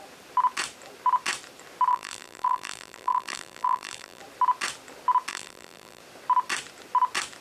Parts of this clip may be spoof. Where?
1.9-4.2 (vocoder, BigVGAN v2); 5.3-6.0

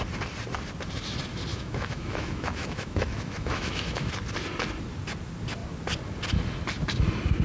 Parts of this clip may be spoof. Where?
1.5-4.1 (autoencoder, DAC-VAE)

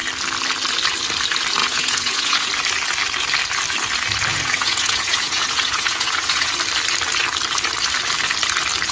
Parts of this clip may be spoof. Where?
1.6-2.5 (vocoder, Vocos); 4.3-6.5